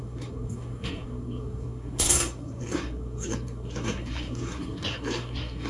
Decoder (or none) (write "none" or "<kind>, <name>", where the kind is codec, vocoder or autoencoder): codec, SNAC